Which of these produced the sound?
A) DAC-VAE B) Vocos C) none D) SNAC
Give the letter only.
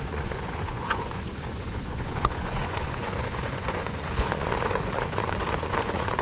B